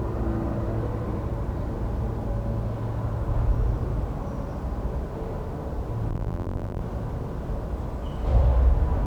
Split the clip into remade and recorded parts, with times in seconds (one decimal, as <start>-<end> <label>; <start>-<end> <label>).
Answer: 0.0-6.1 recorded; 6.1-6.8 remade; 6.8-9.1 recorded